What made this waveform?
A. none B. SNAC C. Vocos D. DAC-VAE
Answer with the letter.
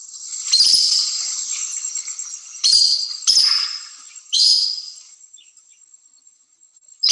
A